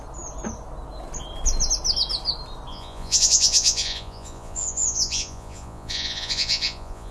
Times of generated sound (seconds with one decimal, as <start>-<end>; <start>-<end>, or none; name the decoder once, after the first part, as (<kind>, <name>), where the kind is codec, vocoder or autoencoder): 2.7-7.1 (vocoder, Vocos)